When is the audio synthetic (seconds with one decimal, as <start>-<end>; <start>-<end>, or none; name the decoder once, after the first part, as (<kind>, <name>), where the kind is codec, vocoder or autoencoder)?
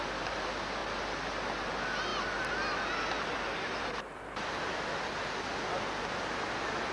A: 4.1-5.3 (vocoder, BigVGAN v2)